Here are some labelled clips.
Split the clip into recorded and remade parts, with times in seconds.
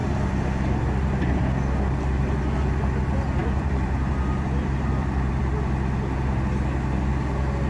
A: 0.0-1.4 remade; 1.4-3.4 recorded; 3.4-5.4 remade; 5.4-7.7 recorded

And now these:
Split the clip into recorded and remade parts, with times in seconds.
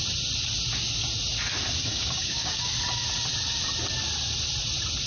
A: 0.0-1.9 recorded; 1.9-2.6 remade; 2.6-5.1 recorded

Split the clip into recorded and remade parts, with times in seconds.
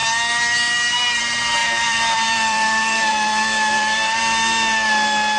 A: 0.0-1.6 recorded; 1.6-4.2 remade; 4.2-5.4 recorded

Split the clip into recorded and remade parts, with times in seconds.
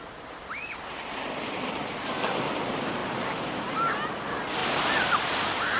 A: 0.0-5.8 recorded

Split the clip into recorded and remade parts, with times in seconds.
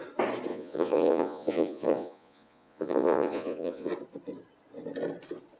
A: 0.0-0.5 recorded; 0.5-3.9 remade; 3.9-5.6 recorded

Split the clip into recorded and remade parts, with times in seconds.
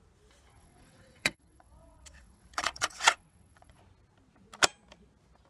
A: 0.0-0.5 recorded; 0.5-3.8 remade; 3.8-5.5 recorded